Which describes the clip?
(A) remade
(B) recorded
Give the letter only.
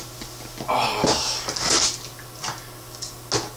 B